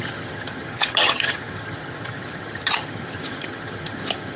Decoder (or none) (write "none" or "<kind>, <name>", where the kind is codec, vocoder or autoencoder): vocoder, HiFi-GAN